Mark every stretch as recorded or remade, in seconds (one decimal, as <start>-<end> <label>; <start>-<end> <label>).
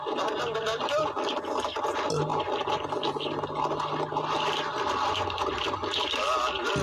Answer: 0.0-2.3 recorded; 2.3-6.2 remade; 6.2-6.8 recorded